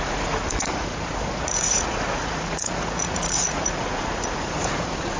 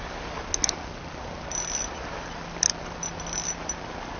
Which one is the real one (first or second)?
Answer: second